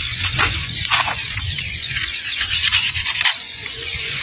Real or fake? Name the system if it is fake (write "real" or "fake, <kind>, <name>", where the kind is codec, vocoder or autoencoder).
fake, vocoder, Vocos